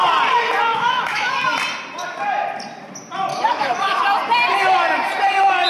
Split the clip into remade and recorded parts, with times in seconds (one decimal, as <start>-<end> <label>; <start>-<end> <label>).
0.0-0.7 recorded; 0.7-1.3 remade; 1.3-3.3 recorded; 3.3-4.0 remade; 4.0-5.7 recorded